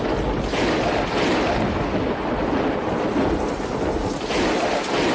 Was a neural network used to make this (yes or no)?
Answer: no